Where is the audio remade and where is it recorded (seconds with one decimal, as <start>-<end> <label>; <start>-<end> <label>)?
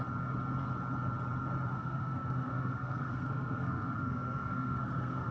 0.0-1.7 recorded; 1.7-5.3 remade